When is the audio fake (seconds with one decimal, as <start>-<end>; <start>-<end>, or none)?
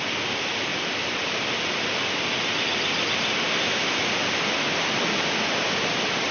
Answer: none